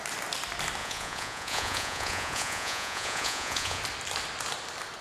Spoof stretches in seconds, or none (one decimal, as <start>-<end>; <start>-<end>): 0.8-3.8